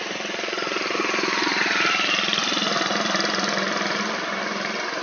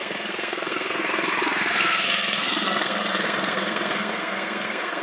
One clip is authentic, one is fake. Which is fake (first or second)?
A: second